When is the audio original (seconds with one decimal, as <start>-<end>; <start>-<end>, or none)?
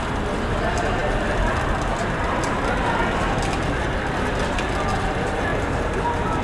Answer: 0.0-6.4